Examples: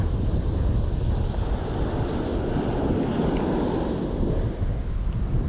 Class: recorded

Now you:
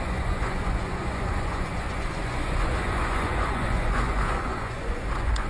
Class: remade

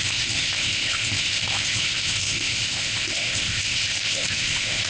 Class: remade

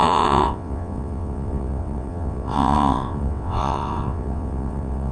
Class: remade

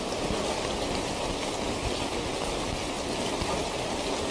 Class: recorded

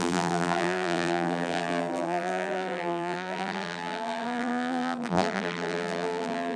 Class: remade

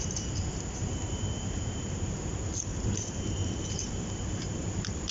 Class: remade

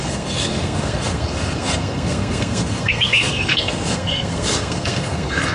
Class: remade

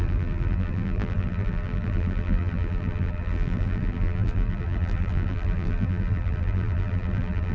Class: remade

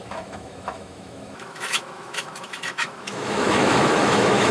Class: remade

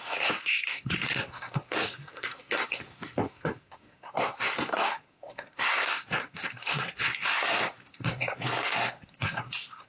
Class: remade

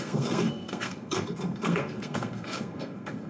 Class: remade